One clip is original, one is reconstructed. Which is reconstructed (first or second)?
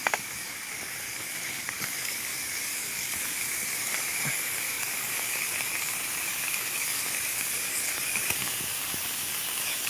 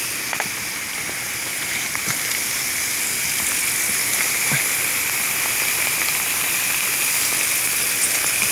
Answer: first